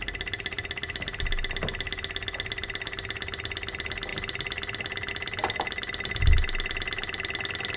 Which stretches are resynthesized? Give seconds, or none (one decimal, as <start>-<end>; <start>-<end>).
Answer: none